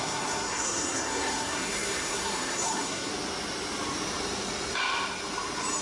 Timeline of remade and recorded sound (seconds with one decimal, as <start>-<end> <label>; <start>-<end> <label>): 0.0-3.1 remade; 3.1-5.8 recorded